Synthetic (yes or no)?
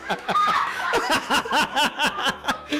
yes